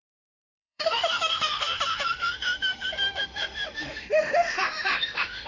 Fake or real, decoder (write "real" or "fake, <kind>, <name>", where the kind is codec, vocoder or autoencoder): fake, autoencoder, DAC-VAE